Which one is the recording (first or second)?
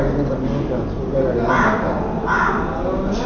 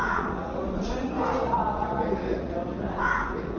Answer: first